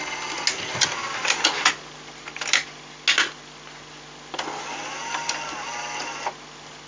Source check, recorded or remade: recorded